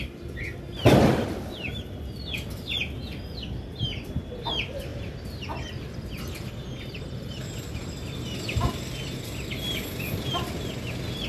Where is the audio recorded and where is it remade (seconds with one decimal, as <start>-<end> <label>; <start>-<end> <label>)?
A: 0.0-4.9 recorded; 4.9-7.3 remade; 7.3-11.3 recorded